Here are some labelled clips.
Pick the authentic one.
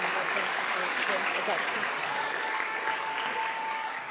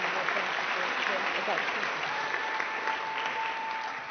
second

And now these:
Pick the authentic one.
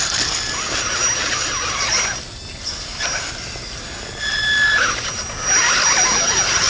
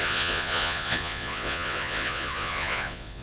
first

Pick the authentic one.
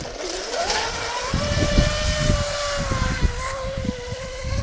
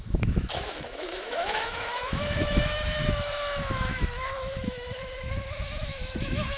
first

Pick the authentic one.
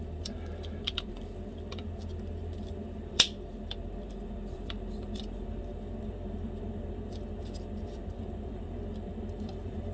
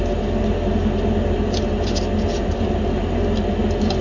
second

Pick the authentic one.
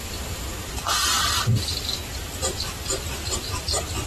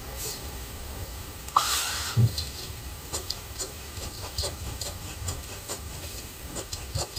first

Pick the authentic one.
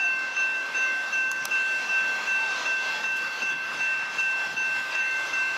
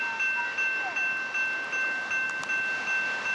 second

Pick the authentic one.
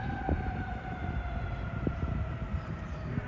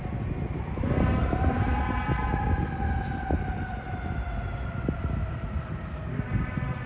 second